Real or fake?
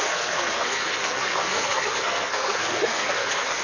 fake